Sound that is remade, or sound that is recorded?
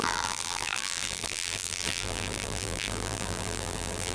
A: remade